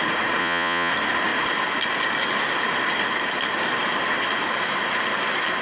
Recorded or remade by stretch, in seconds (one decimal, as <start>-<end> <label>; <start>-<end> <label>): 0.0-0.4 recorded; 0.4-0.9 remade; 0.9-5.6 recorded